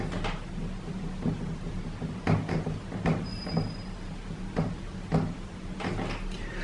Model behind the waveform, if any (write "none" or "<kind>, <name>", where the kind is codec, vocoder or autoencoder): none